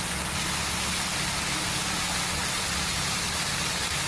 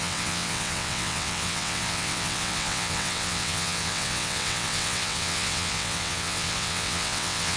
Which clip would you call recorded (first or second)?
first